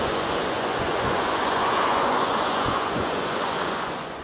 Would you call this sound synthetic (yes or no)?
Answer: yes